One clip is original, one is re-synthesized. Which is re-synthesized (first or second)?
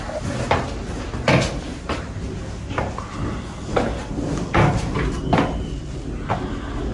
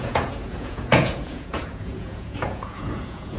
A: second